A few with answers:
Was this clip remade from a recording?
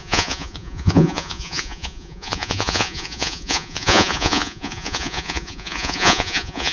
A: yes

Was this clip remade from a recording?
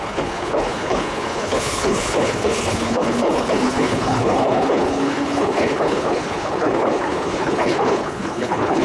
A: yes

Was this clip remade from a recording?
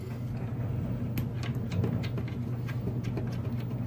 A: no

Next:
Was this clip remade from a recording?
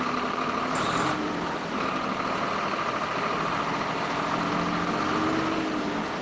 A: no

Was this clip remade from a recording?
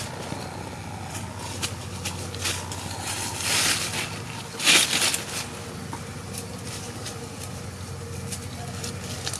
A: no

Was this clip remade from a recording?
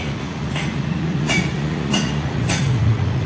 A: yes